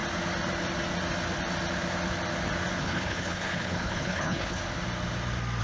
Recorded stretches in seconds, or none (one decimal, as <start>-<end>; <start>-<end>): 0.0-2.8; 4.6-5.6